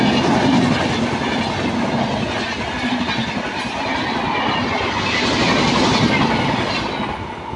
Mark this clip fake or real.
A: real